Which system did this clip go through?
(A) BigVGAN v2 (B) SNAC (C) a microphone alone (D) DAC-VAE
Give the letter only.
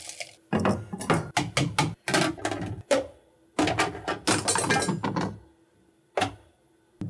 C